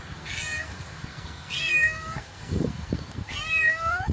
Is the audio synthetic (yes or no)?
yes